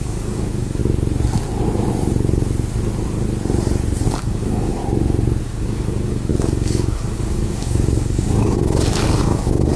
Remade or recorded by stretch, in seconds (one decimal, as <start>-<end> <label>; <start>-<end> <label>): 0.0-0.8 remade; 0.8-4.2 recorded; 4.2-4.8 remade; 4.8-5.4 recorded; 5.4-9.8 remade